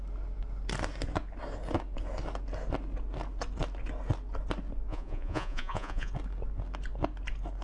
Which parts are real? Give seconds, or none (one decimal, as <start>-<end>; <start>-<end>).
0.0-4.9; 6.1-7.6